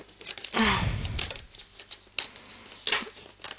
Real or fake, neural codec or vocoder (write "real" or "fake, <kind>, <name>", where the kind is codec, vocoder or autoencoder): real